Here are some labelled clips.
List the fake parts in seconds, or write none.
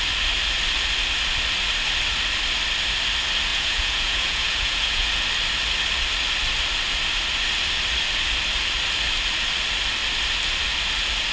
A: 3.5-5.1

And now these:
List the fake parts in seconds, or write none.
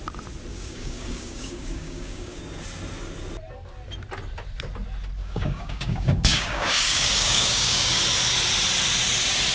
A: 0.5-2.4; 5.2-8.0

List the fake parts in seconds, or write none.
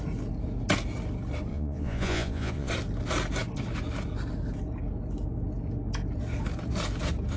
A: 1.5-2.7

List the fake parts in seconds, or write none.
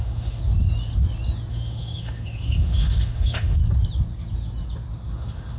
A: 0.0-0.4; 1.5-3.6; 5.1-5.6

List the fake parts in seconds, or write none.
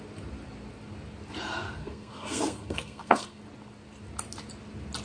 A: 1.8-3.4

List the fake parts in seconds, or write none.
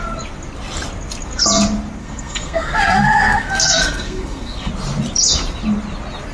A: 2.0-4.7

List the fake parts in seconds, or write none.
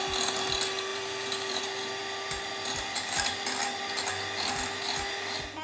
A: 0.9-1.6